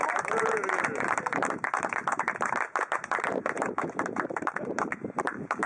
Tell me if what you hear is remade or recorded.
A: remade